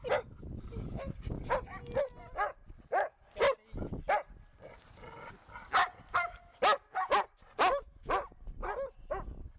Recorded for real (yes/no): yes